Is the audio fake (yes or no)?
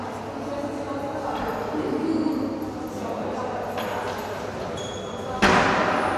no